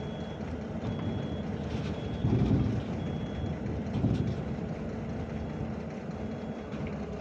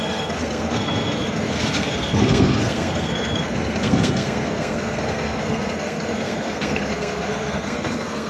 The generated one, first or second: second